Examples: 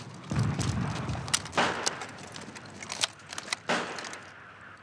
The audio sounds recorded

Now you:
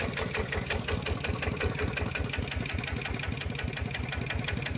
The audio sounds recorded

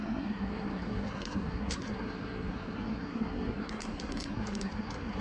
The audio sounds remade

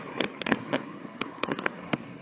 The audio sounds remade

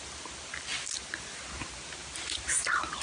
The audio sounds recorded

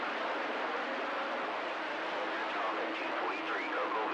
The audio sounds recorded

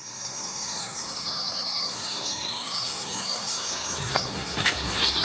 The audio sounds remade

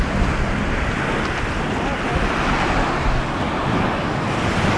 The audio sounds recorded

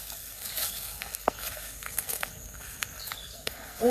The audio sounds remade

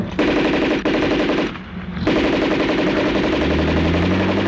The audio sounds recorded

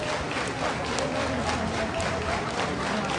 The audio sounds recorded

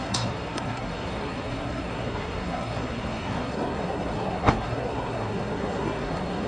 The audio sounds remade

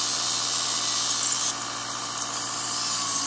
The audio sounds recorded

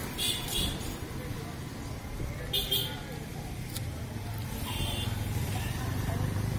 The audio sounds recorded